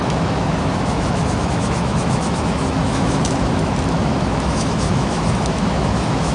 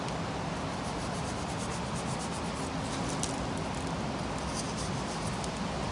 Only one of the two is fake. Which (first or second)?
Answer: first